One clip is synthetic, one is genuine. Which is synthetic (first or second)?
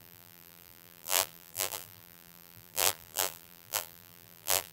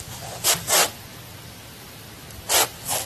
first